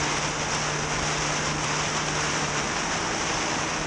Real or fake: real